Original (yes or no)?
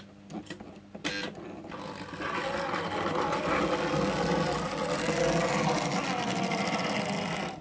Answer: yes